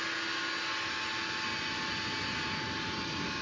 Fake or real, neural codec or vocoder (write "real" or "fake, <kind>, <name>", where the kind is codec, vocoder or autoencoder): real